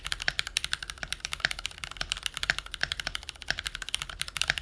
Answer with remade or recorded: recorded